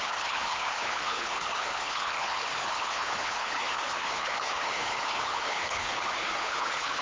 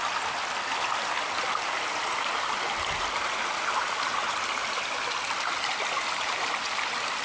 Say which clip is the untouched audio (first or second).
second